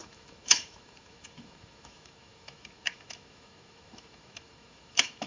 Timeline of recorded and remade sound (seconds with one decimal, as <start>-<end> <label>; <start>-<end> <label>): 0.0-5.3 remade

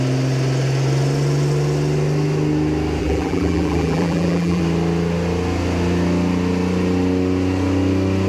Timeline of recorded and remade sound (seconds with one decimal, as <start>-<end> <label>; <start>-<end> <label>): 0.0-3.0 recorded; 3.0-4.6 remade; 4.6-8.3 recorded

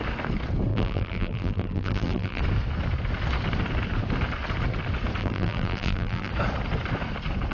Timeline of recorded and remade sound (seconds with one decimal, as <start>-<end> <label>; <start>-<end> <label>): 0.0-0.7 recorded; 0.7-2.4 remade; 2.4-5.2 recorded; 5.2-6.3 remade; 6.3-7.5 recorded

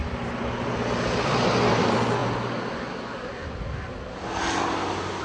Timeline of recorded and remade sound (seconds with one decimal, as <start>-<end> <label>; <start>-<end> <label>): 0.0-0.7 remade; 0.7-5.2 recorded

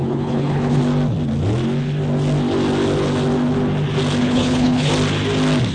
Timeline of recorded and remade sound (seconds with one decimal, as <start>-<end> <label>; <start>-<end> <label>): 0.0-0.8 remade; 0.8-4.2 recorded; 4.2-4.9 remade; 4.9-5.7 recorded

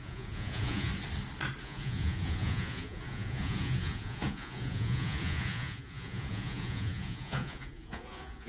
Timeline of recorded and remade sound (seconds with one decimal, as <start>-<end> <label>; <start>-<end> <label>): 0.0-0.9 remade; 0.9-1.6 recorded; 1.6-8.5 remade